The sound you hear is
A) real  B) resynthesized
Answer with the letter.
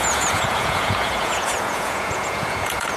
B